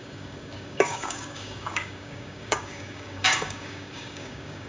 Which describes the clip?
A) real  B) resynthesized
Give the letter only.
B